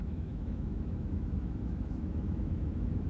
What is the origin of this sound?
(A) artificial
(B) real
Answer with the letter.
A